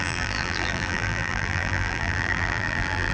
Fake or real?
fake